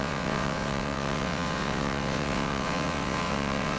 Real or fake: fake